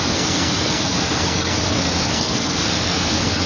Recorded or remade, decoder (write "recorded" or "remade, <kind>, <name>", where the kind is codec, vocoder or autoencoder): remade, codec, SNAC